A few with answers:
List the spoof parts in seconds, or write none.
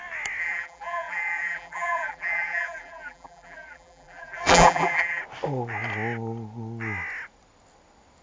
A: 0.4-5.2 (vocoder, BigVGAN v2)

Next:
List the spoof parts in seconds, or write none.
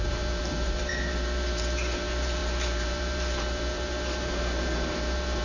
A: 0.0-5.4 (vocoder, BigVGAN v2)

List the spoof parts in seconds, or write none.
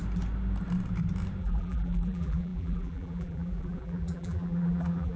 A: 1.4-5.2 (vocoder, BigVGAN v2)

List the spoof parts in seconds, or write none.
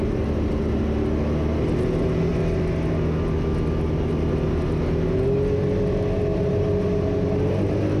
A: none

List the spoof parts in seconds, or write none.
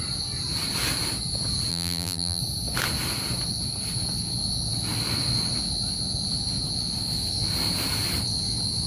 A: 1.7-2.4 (vocoder, BigVGAN v2)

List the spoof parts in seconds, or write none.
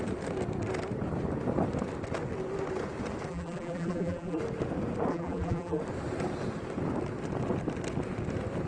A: 3.3-4.4 (vocoder, BigVGAN v2); 5.1-5.8